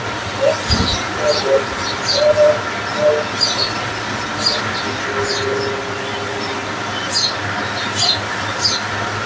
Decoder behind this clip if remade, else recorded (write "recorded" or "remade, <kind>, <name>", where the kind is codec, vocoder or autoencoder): recorded